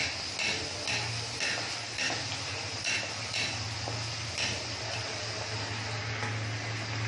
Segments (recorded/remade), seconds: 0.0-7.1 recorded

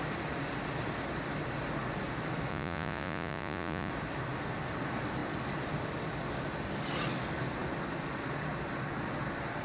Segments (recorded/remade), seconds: 0.0-2.5 recorded; 2.5-3.9 remade; 3.9-9.6 recorded